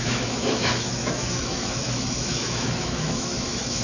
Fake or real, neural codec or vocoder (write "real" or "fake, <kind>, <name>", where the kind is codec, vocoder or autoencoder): fake, autoencoder, DAC-VAE